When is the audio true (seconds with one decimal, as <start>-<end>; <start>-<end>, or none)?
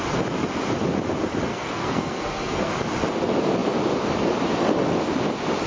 0.0-1.5; 2.7-5.7